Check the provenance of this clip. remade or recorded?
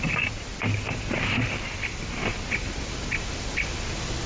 recorded